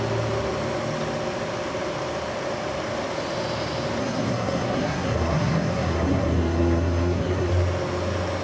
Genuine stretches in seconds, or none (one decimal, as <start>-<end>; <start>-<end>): 0.0-4.0; 7.5-8.4